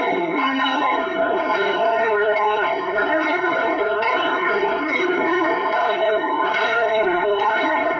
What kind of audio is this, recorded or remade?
remade